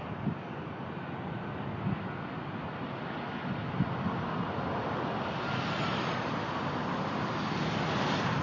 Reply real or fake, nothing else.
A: real